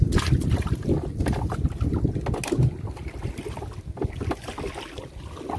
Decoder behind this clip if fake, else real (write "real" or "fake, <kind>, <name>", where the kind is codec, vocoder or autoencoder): real